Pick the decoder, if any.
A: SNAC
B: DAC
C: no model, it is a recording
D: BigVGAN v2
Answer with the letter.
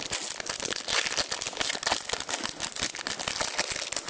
C